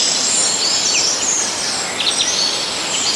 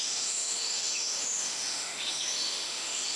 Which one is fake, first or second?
second